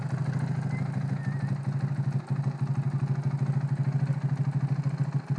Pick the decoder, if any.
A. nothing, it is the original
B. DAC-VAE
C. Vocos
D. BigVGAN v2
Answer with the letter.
A